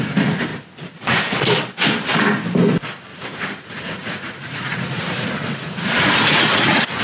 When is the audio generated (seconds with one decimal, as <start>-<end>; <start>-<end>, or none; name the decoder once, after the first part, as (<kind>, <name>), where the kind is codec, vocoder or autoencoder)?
3.1-7.0 (vocoder, Vocos)